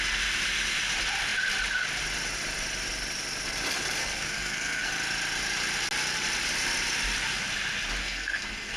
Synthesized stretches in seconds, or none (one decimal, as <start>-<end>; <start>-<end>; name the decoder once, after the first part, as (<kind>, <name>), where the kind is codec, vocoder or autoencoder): 4.0-4.9 (codec, SNAC); 8.0-8.8